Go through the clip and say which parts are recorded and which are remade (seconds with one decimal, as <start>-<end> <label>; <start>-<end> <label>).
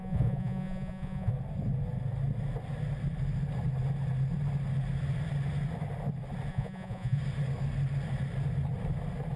0.0-1.3 remade; 1.3-6.5 recorded; 6.5-7.2 remade; 7.2-9.4 recorded